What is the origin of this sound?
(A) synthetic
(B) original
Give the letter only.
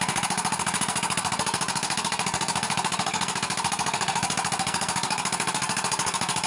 A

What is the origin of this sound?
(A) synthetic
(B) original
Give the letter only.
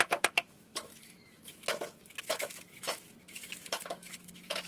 A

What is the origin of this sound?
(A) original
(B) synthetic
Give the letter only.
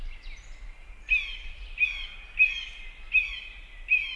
A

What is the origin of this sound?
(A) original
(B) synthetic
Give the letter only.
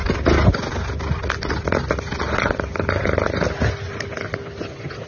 A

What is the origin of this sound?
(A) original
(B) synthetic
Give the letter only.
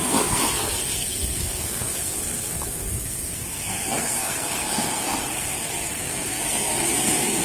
B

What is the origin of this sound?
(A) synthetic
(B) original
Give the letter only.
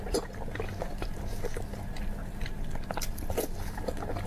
B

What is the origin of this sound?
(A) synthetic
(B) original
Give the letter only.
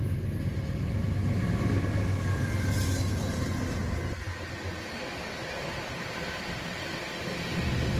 B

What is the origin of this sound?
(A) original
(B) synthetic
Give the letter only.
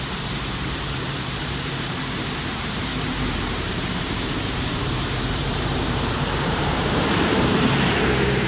B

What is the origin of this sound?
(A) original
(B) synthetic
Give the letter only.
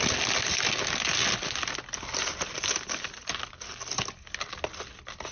A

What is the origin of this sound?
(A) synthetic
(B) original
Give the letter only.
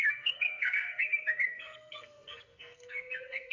A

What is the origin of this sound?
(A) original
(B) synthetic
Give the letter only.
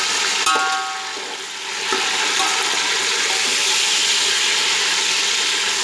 A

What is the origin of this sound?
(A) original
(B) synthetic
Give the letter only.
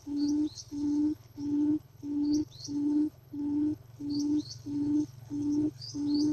B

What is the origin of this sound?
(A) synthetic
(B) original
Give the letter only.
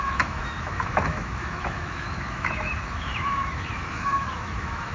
A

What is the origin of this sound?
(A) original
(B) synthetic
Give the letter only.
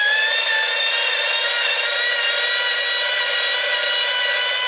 A